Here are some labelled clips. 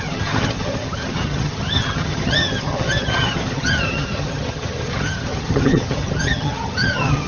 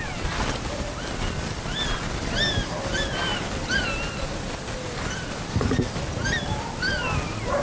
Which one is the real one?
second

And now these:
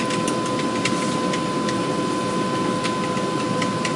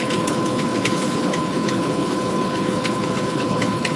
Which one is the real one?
first